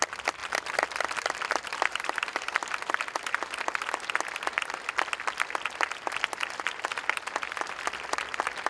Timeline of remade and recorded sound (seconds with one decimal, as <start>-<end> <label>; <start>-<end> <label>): 0.0-1.7 recorded; 1.7-2.5 remade; 2.5-8.7 recorded